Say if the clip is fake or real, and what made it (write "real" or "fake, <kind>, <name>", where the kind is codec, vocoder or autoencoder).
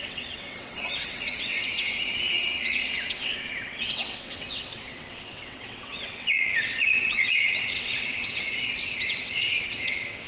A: fake, vocoder, WaveNeXt